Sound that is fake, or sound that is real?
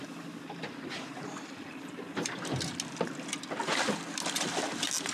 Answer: real